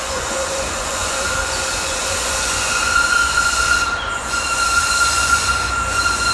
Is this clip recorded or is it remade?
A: remade